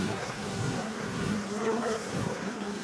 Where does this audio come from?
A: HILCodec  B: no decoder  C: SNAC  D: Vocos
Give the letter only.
C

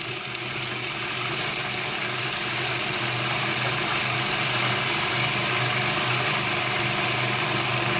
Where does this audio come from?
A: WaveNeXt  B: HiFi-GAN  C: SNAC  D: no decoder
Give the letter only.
D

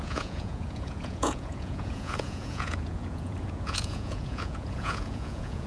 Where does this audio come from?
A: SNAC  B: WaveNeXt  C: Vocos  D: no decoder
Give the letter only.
C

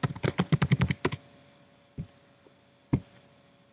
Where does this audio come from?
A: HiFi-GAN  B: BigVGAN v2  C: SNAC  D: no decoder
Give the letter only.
D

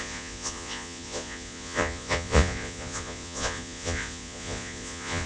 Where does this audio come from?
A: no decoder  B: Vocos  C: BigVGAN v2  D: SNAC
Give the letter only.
B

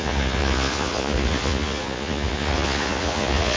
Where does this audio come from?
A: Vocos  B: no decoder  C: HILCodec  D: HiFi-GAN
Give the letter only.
A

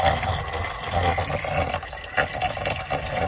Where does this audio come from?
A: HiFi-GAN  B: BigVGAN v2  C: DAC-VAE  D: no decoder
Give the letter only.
D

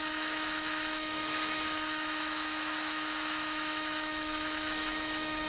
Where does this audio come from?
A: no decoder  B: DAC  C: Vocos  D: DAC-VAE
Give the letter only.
D